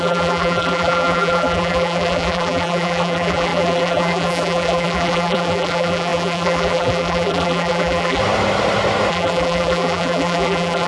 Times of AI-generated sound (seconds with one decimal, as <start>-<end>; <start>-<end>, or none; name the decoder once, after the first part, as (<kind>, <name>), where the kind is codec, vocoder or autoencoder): 0.0-8.2 (vocoder, BigVGAN v2); 9.1-10.9